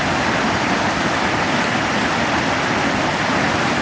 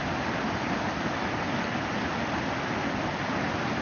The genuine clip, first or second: second